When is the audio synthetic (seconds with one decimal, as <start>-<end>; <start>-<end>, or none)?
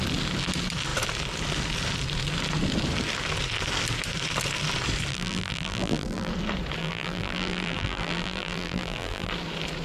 5.1-6.3; 6.8-9.3